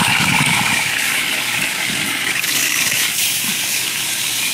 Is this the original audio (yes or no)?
no